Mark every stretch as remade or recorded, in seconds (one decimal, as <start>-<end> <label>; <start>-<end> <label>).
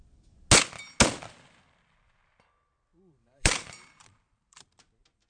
0.0-2.9 recorded; 2.9-4.7 remade; 4.7-5.3 recorded